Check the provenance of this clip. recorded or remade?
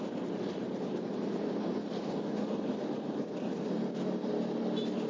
recorded